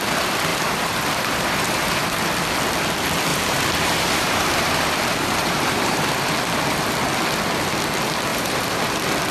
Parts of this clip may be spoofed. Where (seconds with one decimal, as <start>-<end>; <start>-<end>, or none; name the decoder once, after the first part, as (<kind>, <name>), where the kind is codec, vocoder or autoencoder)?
0.5-2.3 (vocoder, BigVGAN v2); 3.3-6.1; 8.3-8.8